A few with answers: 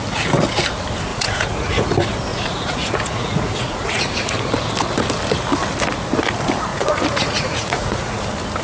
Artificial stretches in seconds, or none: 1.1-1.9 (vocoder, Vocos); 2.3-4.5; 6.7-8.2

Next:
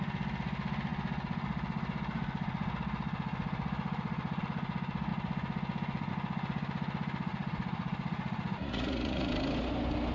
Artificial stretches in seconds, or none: 7.3-9.3 (vocoder, Vocos)

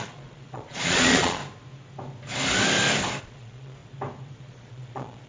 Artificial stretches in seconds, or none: 0.0-1.4 (vocoder, Vocos); 3.2-3.8; 4.4-5.3